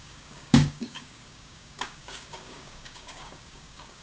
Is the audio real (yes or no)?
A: no